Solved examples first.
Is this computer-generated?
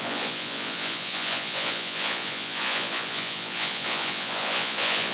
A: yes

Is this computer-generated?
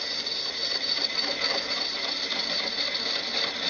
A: no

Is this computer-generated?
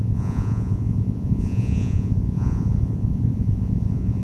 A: yes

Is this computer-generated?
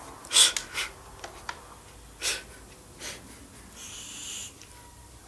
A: no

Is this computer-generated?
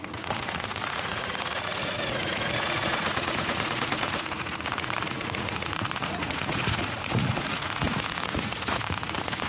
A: yes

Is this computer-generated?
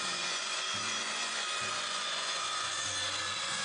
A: yes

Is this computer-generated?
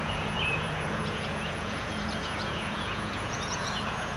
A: yes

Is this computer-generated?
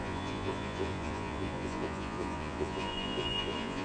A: yes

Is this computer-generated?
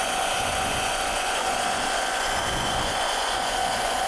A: yes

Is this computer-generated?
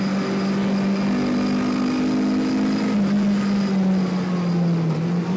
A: no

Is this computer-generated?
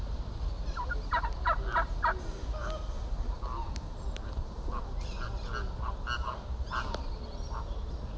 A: no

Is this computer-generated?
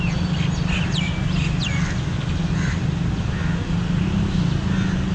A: no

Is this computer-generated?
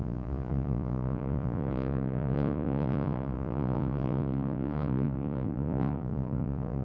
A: yes